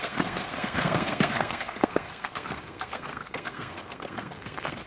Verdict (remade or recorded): remade